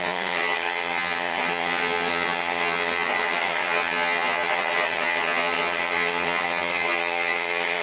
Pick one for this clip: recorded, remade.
remade